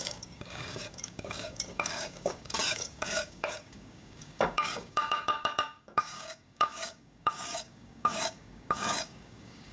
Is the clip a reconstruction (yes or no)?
yes